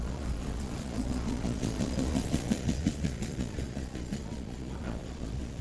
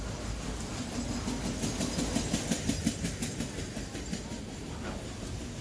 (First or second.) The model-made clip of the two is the first